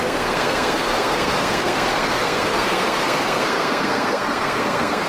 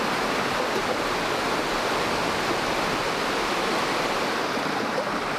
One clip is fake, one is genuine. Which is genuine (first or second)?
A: second